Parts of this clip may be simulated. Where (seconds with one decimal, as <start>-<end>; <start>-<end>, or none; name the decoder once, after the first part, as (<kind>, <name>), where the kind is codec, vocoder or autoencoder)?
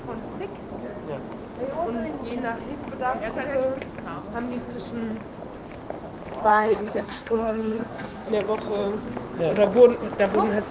6.5-8.3 (codec, SNAC)